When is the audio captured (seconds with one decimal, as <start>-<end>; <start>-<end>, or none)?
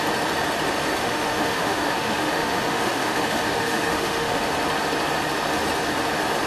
0.0-1.0; 4.5-6.5